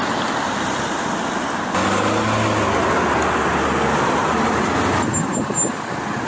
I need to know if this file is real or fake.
real